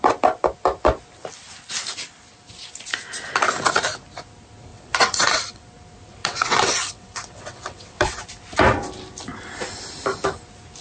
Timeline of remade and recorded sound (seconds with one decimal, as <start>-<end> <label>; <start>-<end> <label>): 0.0-4.7 recorded; 4.7-5.6 remade; 5.6-6.2 recorded; 6.2-8.2 remade; 8.2-10.8 recorded